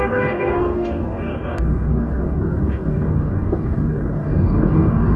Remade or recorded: remade